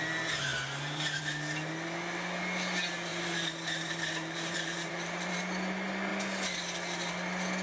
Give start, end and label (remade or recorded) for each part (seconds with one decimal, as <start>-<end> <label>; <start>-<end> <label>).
0.0-3.1 recorded; 3.1-5.4 remade; 5.4-7.6 recorded